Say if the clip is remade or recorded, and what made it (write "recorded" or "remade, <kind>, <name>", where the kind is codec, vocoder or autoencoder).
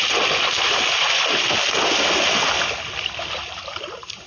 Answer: recorded